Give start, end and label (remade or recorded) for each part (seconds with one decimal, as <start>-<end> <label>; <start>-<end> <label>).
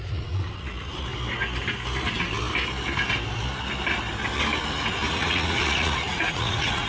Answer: 0.0-1.1 remade; 1.1-5.1 recorded; 5.1-6.9 remade